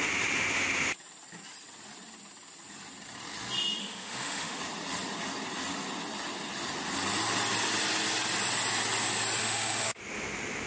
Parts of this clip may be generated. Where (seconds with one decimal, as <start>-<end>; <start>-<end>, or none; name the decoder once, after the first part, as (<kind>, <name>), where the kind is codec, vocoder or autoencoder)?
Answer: 3.8-4.6 (autoencoder, DAC-VAE); 9.4-10.0